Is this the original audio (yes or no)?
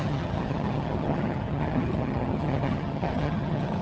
no